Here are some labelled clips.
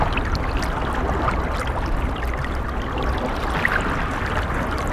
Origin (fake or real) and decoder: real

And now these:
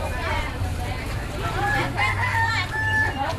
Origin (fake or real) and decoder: real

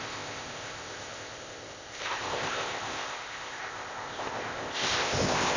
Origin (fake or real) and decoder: fake, codec, ZipCodec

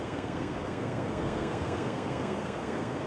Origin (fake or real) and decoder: fake, codec, SNAC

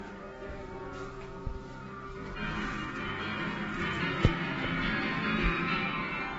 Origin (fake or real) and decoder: real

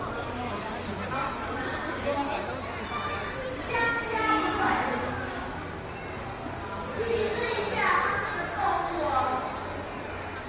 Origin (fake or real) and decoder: real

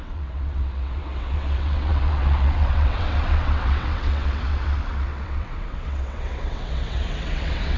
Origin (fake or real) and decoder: fake, vocoder, WaveNeXt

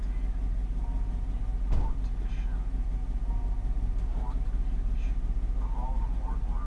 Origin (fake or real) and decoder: real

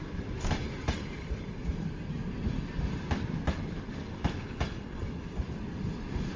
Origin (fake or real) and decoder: fake, vocoder, BigVGAN v2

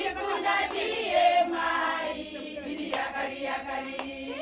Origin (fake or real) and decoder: fake, vocoder, BigVGAN v2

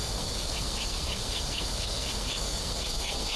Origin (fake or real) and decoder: fake, codec, SNAC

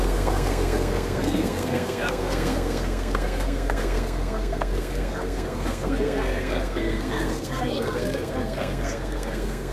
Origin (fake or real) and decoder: fake, codec, SNAC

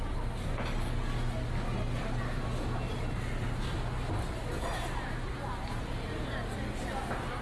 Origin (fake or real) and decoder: real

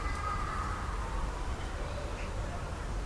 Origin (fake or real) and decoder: real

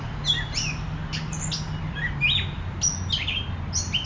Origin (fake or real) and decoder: real